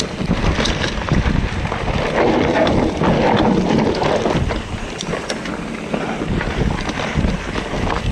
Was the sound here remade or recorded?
recorded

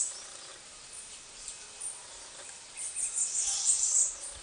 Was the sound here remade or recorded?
recorded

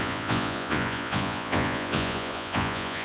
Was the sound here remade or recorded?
remade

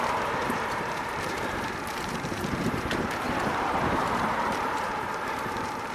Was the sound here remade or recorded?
remade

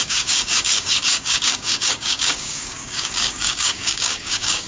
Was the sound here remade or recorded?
remade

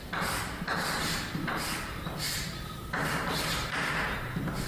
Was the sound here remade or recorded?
remade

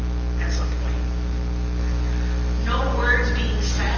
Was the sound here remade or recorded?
recorded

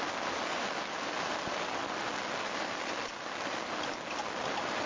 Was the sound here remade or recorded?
recorded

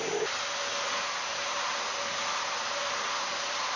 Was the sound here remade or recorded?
recorded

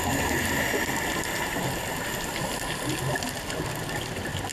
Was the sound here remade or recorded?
recorded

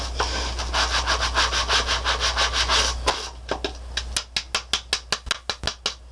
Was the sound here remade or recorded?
recorded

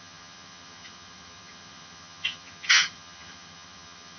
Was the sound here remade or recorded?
remade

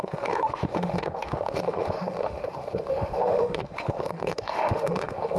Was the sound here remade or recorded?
remade